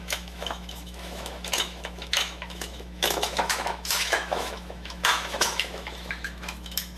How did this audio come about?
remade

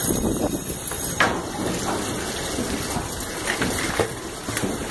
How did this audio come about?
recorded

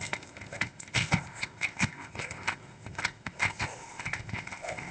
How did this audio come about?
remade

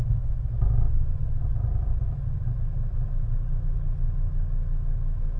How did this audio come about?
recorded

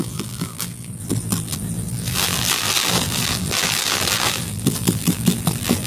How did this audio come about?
remade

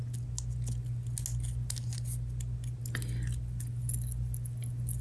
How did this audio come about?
recorded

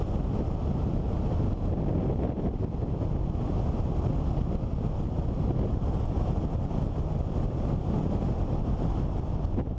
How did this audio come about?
recorded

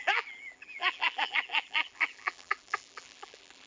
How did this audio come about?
remade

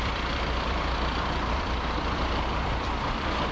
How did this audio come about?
remade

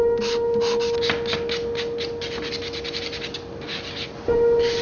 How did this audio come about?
recorded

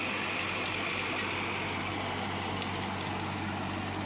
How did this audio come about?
recorded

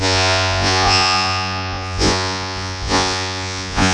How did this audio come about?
remade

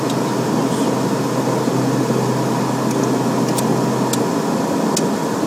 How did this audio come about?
recorded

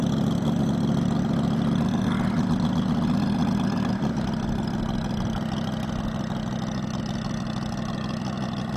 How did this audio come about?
recorded